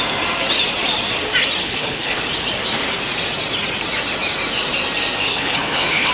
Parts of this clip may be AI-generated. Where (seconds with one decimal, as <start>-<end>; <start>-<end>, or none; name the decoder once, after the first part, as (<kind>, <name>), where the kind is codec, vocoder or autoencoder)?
1.6-2.2 (codec, HILCodec); 5.3-6.1